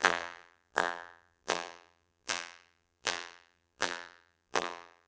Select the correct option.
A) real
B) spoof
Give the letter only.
B